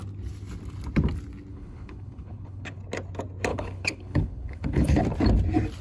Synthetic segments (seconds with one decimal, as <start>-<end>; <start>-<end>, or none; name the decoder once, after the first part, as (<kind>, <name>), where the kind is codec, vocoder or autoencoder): 1.5-2.8 (codec, HILCodec); 3.5-5.0